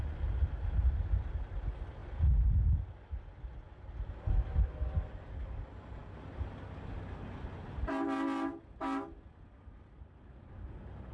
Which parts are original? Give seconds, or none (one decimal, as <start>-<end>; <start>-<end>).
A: 0.0-11.1